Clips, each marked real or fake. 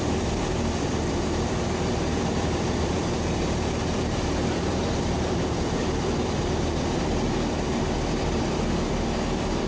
fake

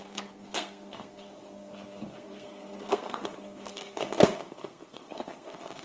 fake